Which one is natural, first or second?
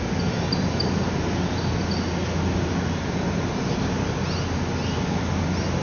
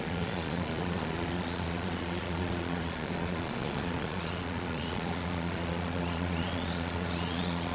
first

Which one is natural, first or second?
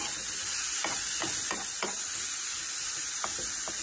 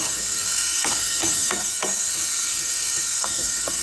first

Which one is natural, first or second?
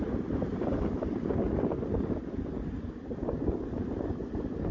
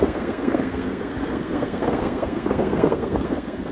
first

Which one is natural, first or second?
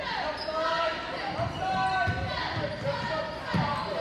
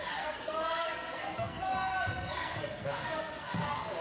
first